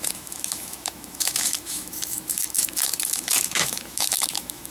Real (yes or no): no